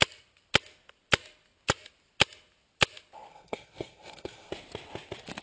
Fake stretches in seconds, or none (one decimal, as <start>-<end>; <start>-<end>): 3.3-4.5